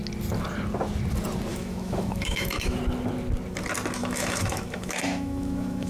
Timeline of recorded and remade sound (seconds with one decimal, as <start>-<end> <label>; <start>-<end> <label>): 0.0-1.5 recorded; 1.5-2.8 remade; 2.8-4.0 recorded; 4.0-5.9 remade